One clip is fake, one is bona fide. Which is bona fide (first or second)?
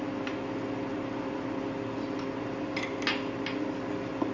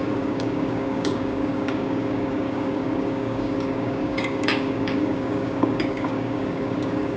first